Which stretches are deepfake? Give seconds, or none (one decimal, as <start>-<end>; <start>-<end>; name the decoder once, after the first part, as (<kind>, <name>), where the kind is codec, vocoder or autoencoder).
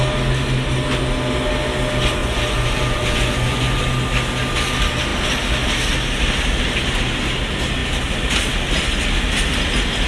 2.2-3.8 (vocoder, Vocos)